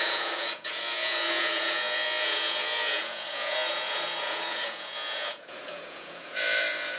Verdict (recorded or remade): remade